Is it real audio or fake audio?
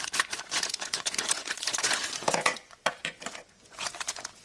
fake